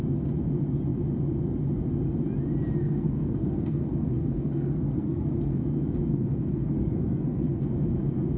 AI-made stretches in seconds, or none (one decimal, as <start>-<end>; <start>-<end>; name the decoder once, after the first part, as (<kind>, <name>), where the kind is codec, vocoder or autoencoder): 2.8-5.6 (codec, SNAC); 6.1-7.6